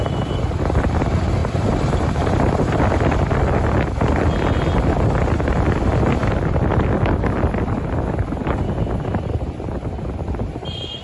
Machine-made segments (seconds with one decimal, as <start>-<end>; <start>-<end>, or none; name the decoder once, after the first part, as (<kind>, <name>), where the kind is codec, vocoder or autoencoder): 1.4-2.3 (vocoder, BigVGAN v2)